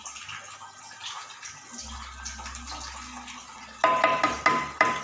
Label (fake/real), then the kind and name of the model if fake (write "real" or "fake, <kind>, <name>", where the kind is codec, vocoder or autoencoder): real